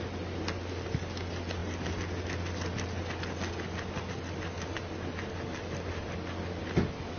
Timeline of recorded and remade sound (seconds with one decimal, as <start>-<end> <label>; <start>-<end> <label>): 0.0-7.2 recorded